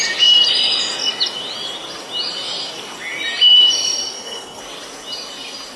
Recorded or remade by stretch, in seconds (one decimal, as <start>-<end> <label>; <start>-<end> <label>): 0.0-4.1 recorded; 4.1-4.6 remade; 4.6-5.8 recorded